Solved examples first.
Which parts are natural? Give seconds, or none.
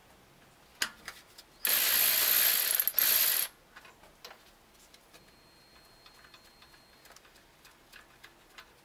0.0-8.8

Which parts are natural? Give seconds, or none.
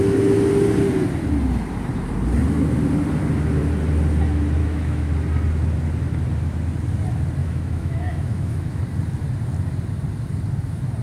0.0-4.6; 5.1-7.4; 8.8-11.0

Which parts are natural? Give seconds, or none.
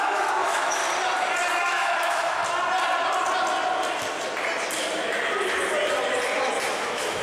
0.8-1.6; 2.4-6.7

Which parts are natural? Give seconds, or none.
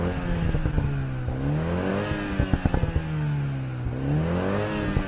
1.9-5.1